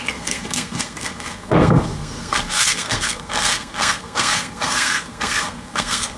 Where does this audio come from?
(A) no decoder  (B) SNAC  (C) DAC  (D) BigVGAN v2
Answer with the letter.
B